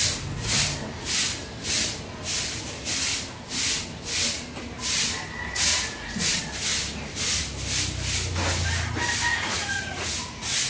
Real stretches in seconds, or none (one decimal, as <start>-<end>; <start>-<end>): 0.0-5.7; 6.4-9.3